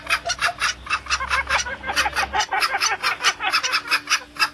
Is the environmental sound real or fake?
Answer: real